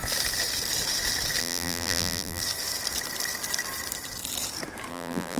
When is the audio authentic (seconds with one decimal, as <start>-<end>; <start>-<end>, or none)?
0.0-1.4; 2.4-4.9